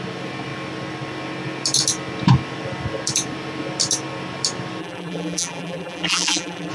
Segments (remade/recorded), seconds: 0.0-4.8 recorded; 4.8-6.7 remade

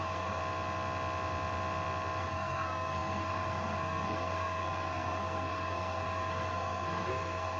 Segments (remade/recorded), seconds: 0.0-0.4 remade; 0.4-2.2 recorded; 2.2-7.6 remade

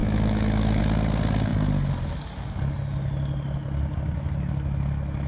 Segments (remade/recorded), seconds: 0.0-0.8 remade; 0.8-5.3 recorded

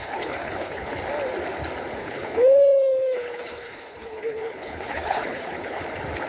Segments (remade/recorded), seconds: 0.0-1.0 remade; 1.0-2.0 recorded; 2.0-5.8 remade; 5.8-6.3 recorded

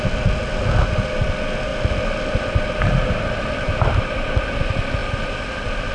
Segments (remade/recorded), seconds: 0.0-5.9 recorded

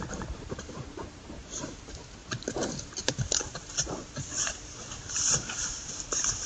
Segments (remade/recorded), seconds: 0.0-6.5 remade

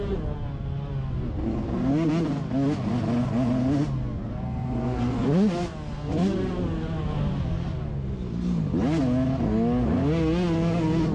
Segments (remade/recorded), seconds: 0.0-11.1 recorded

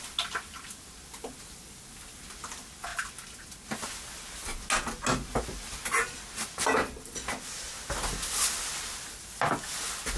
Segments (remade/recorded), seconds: 0.0-10.2 recorded